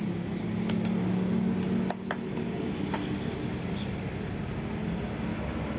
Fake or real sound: real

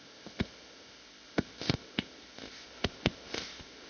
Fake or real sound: fake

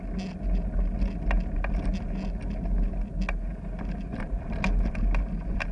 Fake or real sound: real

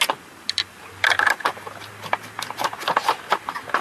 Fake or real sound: real